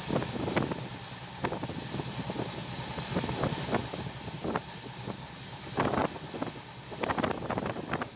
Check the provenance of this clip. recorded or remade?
recorded